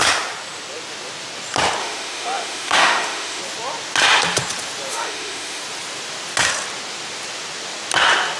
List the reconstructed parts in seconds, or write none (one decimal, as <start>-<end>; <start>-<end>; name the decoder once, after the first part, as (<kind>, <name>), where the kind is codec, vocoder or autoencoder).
1.8-3.4 (autoencoder, DAC-VAE); 4.9-5.6